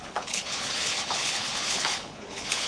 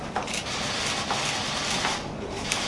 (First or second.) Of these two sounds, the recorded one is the second